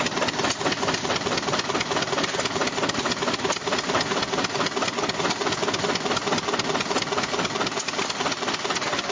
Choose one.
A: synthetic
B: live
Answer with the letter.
B